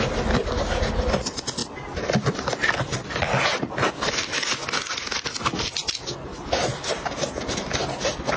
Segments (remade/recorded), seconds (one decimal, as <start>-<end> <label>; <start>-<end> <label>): 0.0-8.4 recorded